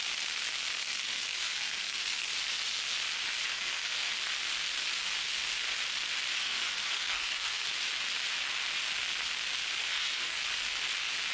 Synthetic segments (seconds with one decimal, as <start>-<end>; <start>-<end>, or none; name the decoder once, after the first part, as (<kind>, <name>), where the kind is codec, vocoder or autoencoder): 0.8-2.3 (codec, SNAC); 3.5-4.1; 6.3-7.7; 9.8-10.4